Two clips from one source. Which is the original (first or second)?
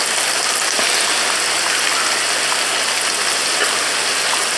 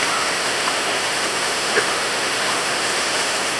first